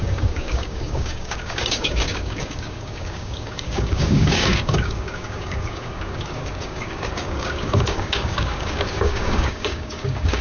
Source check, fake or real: fake